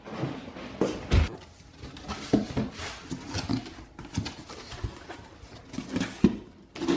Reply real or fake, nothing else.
real